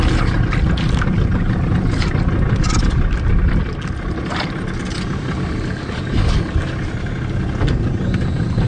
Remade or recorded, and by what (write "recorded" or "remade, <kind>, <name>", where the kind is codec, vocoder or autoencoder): recorded